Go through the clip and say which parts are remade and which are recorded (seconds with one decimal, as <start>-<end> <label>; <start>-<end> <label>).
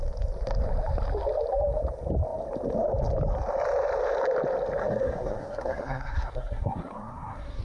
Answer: 0.0-4.8 recorded; 4.8-7.6 remade